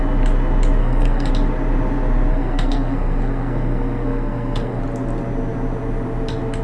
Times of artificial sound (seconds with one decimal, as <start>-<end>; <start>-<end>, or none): 0.8-1.3; 2.3-4.8